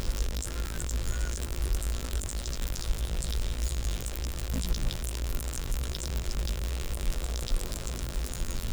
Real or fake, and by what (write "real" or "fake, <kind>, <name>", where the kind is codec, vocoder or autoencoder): fake, vocoder, BigVGAN v2